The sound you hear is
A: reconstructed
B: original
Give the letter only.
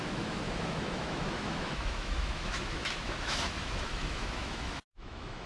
A